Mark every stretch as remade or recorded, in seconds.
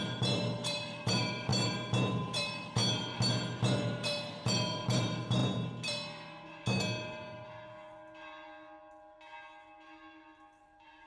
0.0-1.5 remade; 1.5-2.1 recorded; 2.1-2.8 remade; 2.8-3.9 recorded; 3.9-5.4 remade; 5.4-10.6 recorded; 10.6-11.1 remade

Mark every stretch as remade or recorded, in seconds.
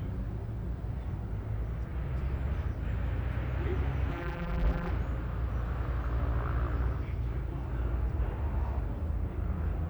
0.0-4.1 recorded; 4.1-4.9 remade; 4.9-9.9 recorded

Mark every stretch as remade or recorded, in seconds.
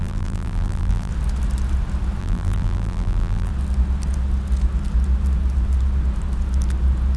0.0-1.1 remade; 1.1-2.2 recorded; 2.2-3.5 remade; 3.5-7.2 recorded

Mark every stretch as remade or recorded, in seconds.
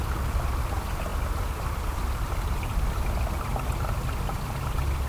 0.0-5.1 recorded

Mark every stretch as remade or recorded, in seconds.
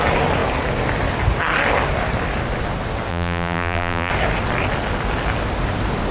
0.0-3.1 recorded; 3.1-4.1 remade; 4.1-6.1 recorded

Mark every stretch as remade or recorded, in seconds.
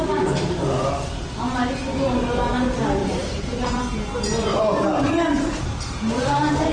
0.0-3.0 recorded; 3.0-3.8 remade; 3.8-4.5 recorded; 4.5-6.7 remade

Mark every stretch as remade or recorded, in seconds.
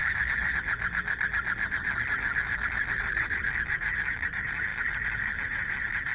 0.0-3.7 recorded; 3.7-4.7 remade; 4.7-5.4 recorded; 5.4-6.1 remade